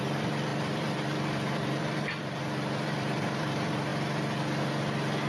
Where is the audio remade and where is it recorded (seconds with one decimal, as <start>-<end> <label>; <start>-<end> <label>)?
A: 0.0-3.9 remade; 3.9-5.3 recorded